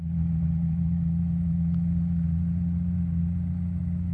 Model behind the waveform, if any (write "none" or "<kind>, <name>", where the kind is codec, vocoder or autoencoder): none